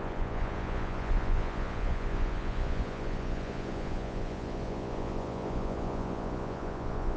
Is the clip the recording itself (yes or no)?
no